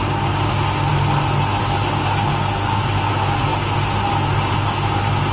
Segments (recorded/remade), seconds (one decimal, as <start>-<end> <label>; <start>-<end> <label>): 0.0-2.3 recorded; 2.3-3.0 remade; 3.0-5.3 recorded